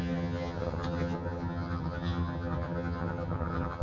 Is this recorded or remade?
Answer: remade